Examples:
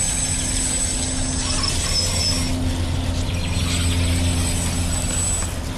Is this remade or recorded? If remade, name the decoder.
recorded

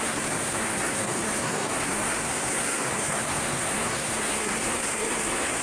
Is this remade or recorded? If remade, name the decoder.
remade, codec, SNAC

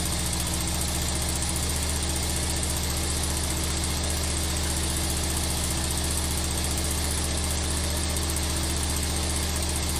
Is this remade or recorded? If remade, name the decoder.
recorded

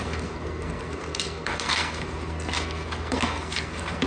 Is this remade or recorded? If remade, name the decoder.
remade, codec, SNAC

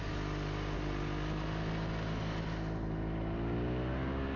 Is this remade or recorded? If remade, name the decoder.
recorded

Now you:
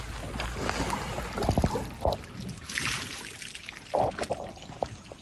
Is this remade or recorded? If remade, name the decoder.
recorded